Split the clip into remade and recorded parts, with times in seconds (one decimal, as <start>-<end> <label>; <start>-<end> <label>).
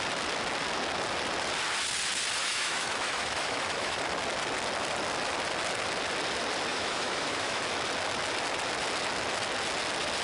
0.0-2.4 recorded; 2.4-4.0 remade; 4.0-6.7 recorded; 6.7-7.6 remade; 7.6-10.2 recorded